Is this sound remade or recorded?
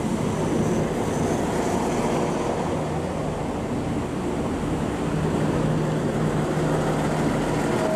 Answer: recorded